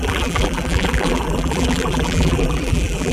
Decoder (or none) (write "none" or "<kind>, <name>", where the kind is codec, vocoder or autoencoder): vocoder, BigVGAN v2